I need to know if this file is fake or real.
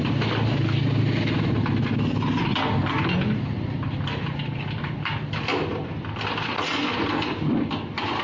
real